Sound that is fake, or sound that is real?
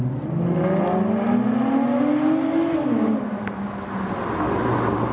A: real